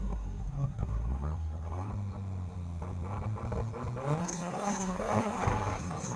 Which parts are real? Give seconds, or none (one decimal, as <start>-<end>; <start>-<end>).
1.9-4.2